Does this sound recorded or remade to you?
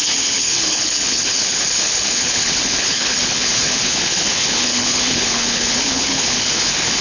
remade